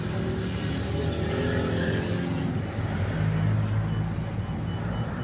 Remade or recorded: recorded